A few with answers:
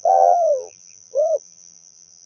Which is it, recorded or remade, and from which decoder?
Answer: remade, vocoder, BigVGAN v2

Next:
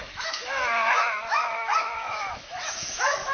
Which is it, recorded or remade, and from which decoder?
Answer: remade, autoencoder, DAC-VAE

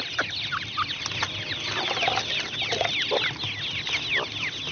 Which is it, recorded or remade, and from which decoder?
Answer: recorded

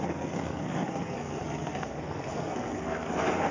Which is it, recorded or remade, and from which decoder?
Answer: remade, codec, SNAC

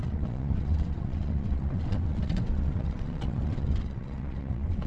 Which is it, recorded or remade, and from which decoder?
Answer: remade, vocoder, WaveNeXt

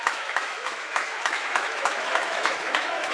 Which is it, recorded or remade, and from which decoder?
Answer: remade, autoencoder, DAC-VAE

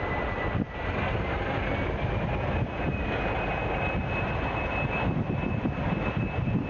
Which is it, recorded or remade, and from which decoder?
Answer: recorded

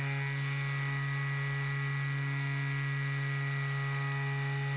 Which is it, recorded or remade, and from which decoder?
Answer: recorded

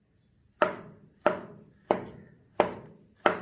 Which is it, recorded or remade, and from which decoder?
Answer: recorded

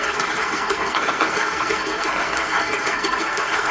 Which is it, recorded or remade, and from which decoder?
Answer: remade, codec, SNAC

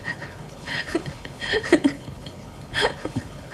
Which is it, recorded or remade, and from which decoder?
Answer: remade, codec, HILCodec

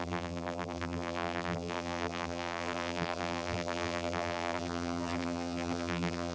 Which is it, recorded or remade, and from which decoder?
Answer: remade, vocoder, BigVGAN v2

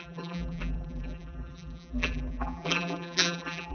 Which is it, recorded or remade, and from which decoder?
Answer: remade, vocoder, BigVGAN v2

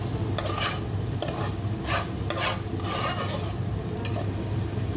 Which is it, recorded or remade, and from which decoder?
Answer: recorded